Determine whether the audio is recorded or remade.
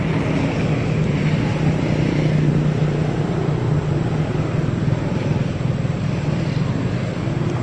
recorded